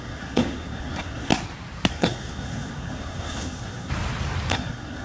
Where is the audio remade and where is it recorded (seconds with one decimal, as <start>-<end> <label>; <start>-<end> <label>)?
0.0-1.3 remade; 1.3-1.9 recorded; 1.9-3.9 remade; 3.9-4.5 recorded; 4.5-5.0 remade